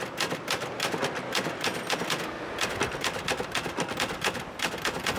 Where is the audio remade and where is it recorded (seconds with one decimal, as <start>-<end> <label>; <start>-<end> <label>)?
0.0-5.2 recorded